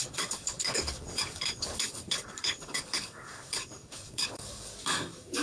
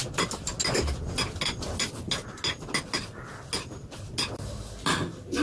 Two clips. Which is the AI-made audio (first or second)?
first